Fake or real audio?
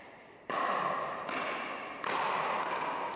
real